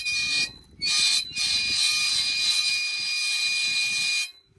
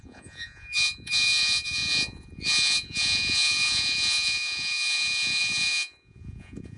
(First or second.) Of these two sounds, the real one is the first